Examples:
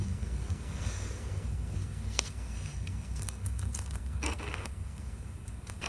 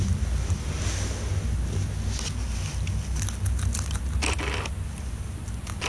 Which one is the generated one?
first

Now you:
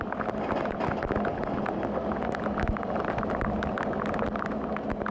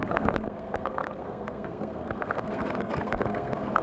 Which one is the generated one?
second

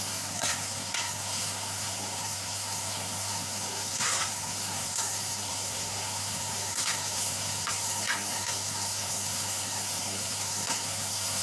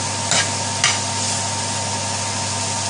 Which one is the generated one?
first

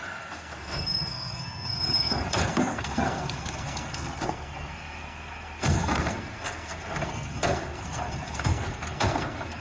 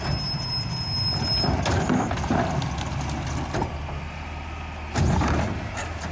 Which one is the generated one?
first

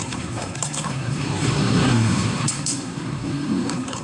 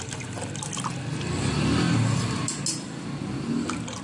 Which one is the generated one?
first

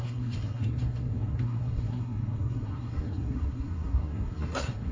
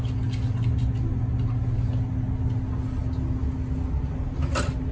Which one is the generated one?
first